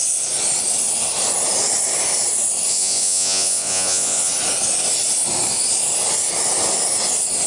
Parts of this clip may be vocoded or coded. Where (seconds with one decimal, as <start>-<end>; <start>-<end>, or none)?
2.7-4.3